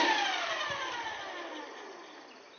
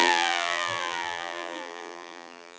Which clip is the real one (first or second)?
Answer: first